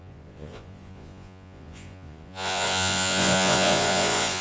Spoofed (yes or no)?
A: yes